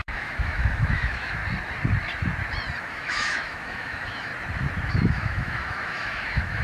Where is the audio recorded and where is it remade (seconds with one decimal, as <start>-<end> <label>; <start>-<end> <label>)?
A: 0.0-1.4 remade; 1.4-2.8 recorded; 2.8-4.3 remade; 4.3-4.9 recorded; 4.9-6.6 remade